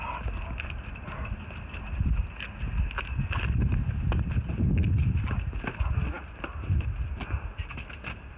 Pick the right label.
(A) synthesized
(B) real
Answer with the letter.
B